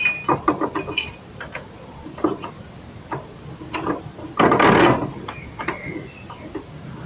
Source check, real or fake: real